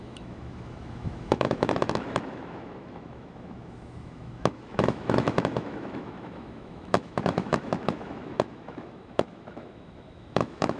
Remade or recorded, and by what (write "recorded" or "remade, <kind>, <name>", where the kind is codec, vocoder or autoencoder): remade, autoencoder, DAC-VAE